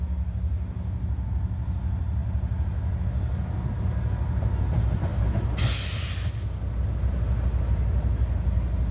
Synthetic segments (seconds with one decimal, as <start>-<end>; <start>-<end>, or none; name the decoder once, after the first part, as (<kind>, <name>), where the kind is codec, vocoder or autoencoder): none